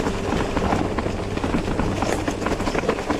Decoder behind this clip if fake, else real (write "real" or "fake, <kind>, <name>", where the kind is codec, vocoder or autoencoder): real